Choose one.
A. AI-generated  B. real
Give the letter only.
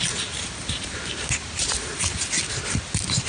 B